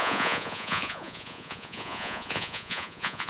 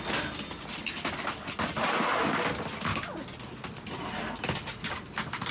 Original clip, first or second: second